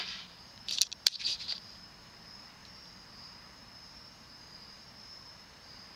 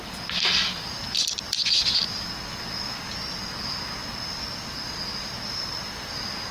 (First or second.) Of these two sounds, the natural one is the second